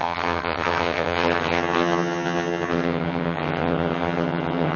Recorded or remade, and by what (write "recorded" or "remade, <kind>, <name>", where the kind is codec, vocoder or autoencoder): remade, vocoder, HiFi-GAN